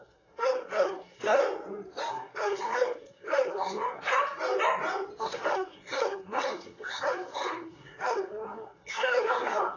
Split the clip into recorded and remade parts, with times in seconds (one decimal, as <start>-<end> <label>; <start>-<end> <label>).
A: 0.0-1.4 remade; 1.4-2.1 recorded; 2.1-4.2 remade; 4.2-5.2 recorded; 5.2-9.8 remade